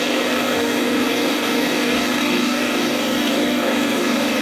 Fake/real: fake